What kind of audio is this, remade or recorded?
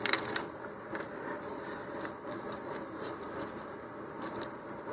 remade